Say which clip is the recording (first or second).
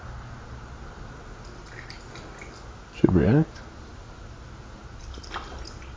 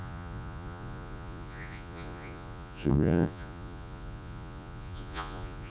first